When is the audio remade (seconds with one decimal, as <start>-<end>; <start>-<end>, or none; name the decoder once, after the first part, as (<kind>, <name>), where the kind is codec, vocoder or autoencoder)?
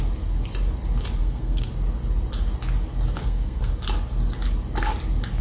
1.2-1.7 (codec, SNAC); 3.2-3.7